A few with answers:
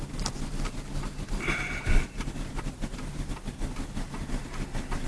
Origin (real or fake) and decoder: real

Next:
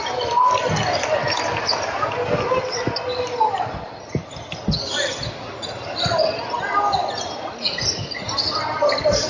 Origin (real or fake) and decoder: real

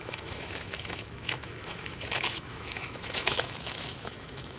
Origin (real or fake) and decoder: fake, autoencoder, DAC-VAE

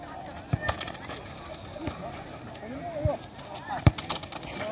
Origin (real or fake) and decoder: real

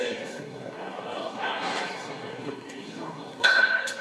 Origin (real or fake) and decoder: fake, codec, SNAC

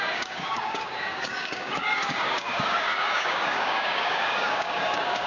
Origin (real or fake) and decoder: fake, codec, DAC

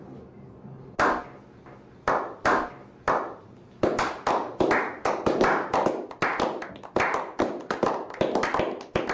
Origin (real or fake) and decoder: real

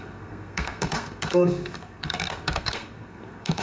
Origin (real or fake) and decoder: fake, codec, SNAC